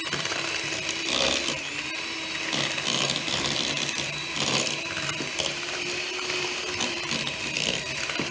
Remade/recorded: remade